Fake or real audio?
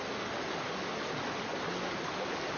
real